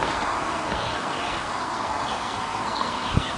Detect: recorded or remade remade